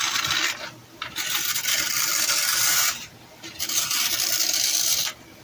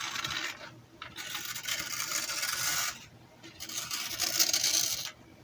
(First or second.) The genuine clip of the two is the second